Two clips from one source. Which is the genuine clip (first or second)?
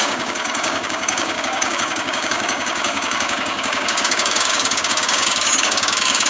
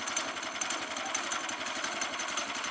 second